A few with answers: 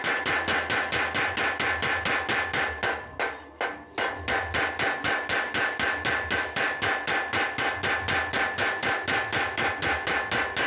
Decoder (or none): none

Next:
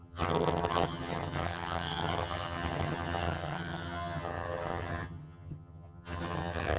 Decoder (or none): vocoder, HiFi-GAN